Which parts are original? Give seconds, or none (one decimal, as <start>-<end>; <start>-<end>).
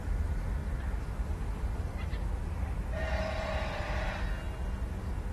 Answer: 0.0-0.6; 3.8-5.3